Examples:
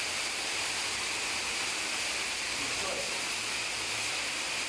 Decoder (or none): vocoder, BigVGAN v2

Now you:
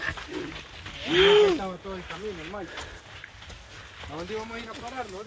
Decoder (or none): none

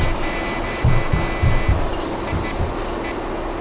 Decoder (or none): none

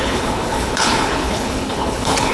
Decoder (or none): codec, HILCodec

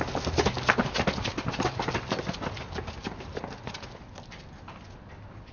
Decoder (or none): none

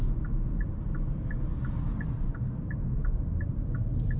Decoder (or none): none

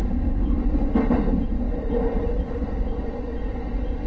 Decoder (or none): none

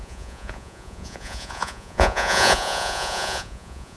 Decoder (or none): vocoder, Vocos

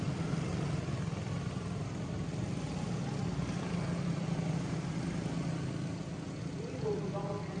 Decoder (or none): none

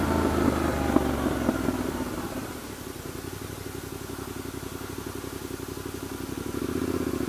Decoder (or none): none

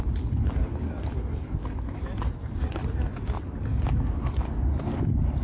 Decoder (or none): none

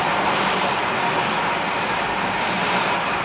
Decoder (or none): none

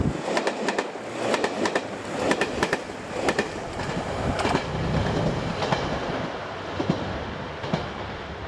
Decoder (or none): none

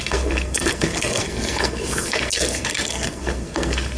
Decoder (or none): codec, SNAC